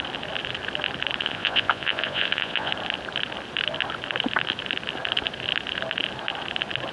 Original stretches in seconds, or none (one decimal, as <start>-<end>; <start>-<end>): 0.0-1.2; 2.7-6.9